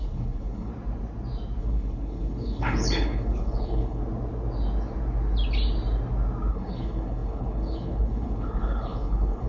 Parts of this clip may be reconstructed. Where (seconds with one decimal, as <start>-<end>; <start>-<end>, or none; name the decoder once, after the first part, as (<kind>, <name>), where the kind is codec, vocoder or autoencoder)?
0.0-0.7 (codec, HILCodec); 1.6-4.0; 6.5-9.5